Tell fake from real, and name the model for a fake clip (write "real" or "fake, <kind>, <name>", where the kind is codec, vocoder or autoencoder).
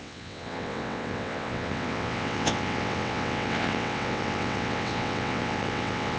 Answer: fake, vocoder, WaveNeXt